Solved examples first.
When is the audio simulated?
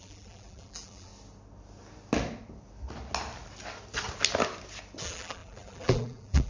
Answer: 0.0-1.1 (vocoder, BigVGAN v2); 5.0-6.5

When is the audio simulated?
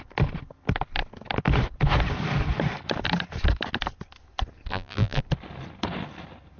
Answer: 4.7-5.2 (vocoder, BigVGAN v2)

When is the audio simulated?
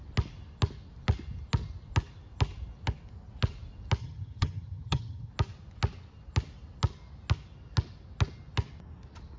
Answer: 4.0-5.3 (vocoder, HiFi-GAN)